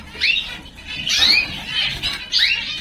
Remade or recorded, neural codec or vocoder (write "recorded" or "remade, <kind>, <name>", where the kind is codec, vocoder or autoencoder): recorded